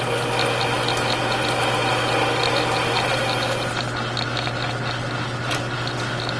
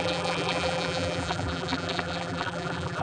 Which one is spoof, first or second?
second